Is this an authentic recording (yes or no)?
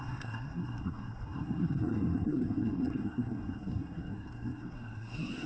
no